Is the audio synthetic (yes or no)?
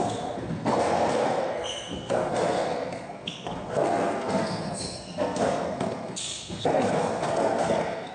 yes